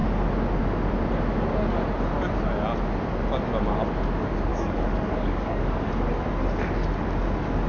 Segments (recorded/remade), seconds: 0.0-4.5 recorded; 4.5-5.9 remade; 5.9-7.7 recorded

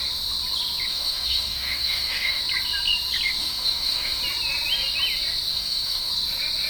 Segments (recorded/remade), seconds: 0.0-0.9 recorded; 0.9-2.4 remade; 2.4-3.4 recorded; 3.4-4.2 remade; 4.2-5.5 recorded; 5.5-6.1 remade; 6.1-6.7 recorded

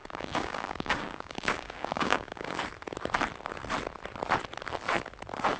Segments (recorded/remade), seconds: 0.0-2.6 remade; 2.6-5.6 recorded

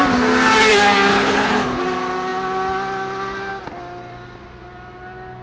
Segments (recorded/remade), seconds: 0.0-1.1 recorded; 1.1-1.8 remade; 1.8-5.4 recorded

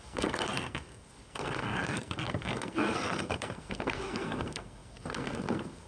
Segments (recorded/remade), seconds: 0.0-5.9 remade

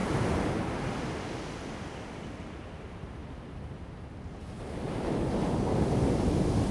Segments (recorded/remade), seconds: 0.0-6.7 recorded

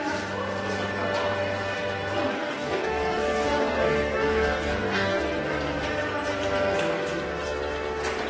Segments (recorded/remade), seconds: 0.0-2.3 recorded; 2.3-5.2 remade; 5.2-8.3 recorded

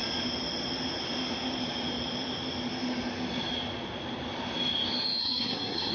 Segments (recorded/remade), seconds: 0.0-5.2 recorded; 5.2-5.9 remade